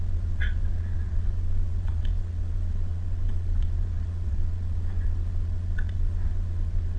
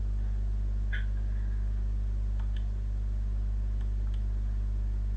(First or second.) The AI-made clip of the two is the first